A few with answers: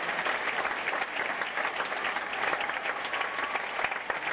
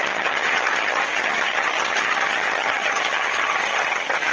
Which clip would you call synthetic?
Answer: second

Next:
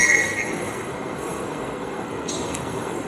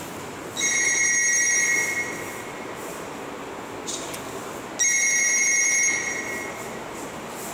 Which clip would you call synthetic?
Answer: first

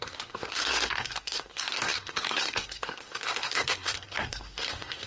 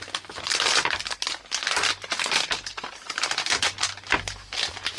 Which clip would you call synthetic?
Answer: first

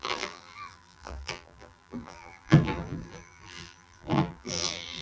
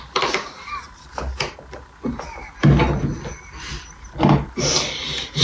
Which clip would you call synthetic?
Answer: first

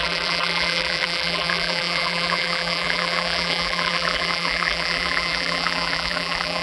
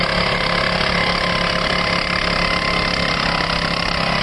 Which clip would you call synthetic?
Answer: first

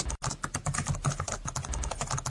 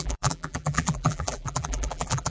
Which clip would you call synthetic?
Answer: second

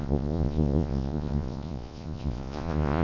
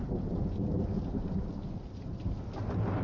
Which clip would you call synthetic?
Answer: first